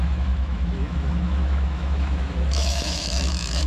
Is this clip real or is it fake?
fake